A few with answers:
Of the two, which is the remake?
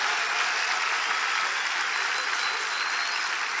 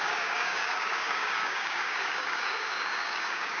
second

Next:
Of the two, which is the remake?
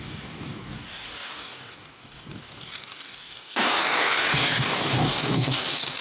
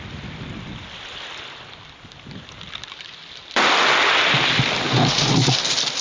first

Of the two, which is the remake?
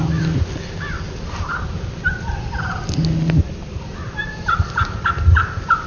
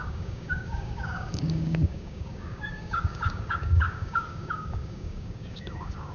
second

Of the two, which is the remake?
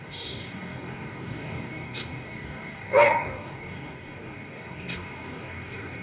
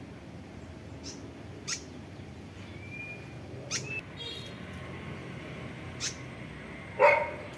first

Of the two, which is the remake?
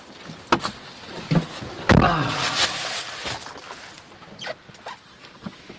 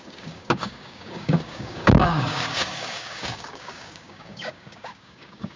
second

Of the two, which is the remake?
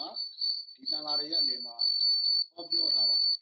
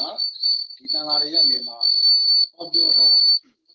second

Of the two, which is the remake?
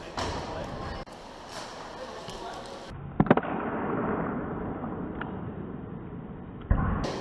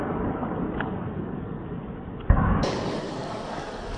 second